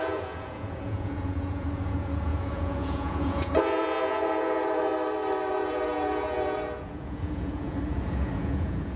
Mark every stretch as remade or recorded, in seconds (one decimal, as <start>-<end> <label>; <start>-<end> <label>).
0.0-4.9 remade; 4.9-5.5 recorded; 5.5-9.0 remade

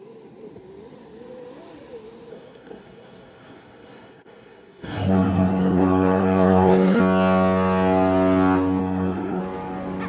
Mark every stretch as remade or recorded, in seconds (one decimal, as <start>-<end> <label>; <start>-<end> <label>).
0.0-2.3 recorded; 2.3-7.0 remade; 7.0-8.8 recorded; 8.8-9.4 remade; 9.4-10.1 recorded